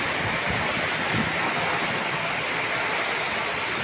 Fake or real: real